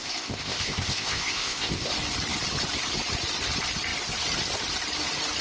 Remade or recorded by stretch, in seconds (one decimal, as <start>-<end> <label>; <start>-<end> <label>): 0.0-1.9 remade; 1.9-5.4 recorded